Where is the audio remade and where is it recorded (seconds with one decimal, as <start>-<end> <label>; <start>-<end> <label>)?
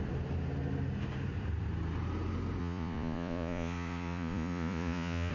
0.0-2.6 recorded; 2.6-5.3 remade